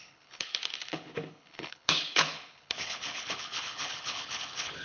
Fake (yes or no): yes